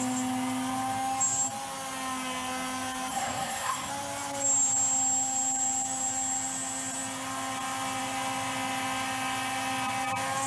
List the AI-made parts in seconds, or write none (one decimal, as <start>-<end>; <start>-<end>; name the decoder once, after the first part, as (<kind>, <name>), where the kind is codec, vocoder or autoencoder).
3.1-3.9 (codec, SNAC)